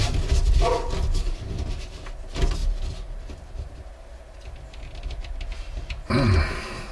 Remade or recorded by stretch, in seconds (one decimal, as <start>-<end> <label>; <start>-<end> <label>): 0.0-6.9 recorded